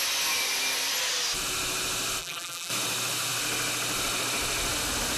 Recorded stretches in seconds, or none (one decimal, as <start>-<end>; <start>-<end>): 0.0-2.2; 2.7-5.2